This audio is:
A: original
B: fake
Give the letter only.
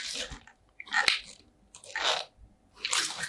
A